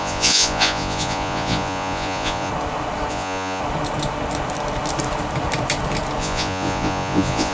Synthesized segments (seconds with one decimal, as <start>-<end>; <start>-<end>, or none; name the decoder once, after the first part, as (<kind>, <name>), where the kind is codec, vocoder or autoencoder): 0.0-2.5 (vocoder, Vocos); 3.1-3.6; 6.2-7.5

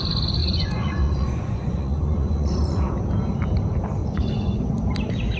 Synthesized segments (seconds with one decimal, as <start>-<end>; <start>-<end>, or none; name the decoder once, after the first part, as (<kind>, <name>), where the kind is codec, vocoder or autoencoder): 0.4-2.9 (vocoder, Vocos); 4.0-4.7

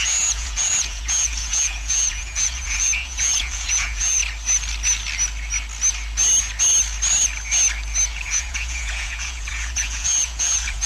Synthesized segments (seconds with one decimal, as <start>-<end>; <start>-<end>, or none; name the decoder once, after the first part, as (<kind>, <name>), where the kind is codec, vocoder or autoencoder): 0.0-4.2 (vocoder, Vocos); 8.1-10.9

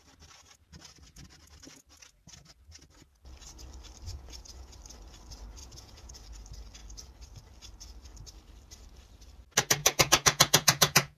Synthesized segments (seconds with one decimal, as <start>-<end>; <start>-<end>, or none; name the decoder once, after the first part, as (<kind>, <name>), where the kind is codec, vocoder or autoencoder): 4.1-4.7 (vocoder, Vocos); 5.6-6.1; 9.8-11.2

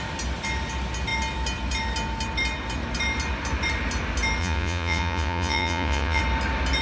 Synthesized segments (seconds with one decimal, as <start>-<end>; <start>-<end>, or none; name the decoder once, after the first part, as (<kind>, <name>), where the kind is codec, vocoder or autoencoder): 4.4-6.2 (vocoder, Vocos)